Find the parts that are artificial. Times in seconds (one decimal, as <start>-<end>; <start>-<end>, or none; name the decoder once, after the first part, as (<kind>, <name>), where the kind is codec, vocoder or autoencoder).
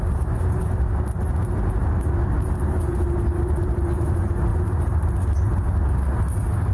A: 4.5-5.1 (vocoder, BigVGAN v2)